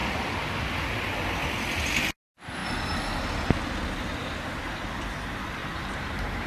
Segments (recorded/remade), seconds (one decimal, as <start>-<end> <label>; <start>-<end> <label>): 0.0-5.6 recorded; 5.6-6.5 remade